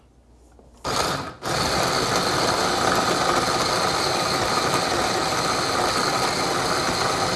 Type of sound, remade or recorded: recorded